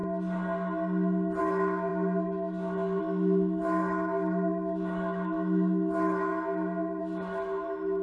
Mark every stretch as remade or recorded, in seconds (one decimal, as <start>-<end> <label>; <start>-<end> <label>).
0.0-1.4 recorded; 1.4-6.3 remade; 6.3-7.0 recorded; 7.0-8.0 remade